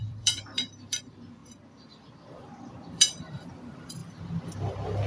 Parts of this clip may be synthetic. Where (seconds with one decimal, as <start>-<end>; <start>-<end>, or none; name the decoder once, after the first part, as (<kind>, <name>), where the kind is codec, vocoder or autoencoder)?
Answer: 0.0-4.0 (vocoder, BigVGAN v2)